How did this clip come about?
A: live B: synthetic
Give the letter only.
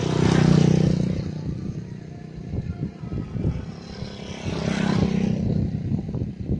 A